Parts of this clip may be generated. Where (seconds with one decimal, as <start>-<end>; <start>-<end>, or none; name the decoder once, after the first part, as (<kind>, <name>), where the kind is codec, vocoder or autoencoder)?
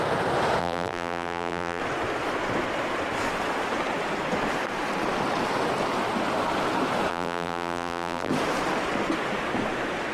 0.6-1.8 (vocoder, BigVGAN v2); 7.1-8.3